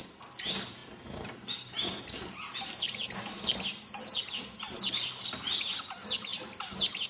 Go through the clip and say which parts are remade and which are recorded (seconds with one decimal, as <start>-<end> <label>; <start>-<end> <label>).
0.0-7.1 recorded